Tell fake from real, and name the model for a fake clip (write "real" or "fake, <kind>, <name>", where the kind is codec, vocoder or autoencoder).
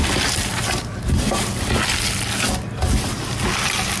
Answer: real